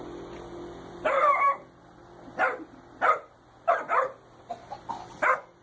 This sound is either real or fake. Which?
real